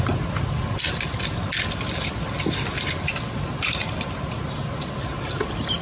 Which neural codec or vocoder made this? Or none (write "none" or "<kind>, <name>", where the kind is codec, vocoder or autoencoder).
none